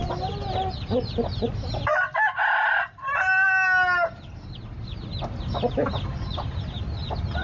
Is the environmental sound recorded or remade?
recorded